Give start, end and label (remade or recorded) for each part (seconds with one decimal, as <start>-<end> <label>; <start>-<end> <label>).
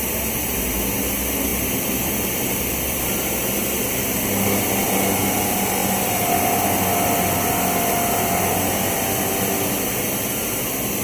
0.0-1.5 recorded; 1.5-3.0 remade; 3.0-11.0 recorded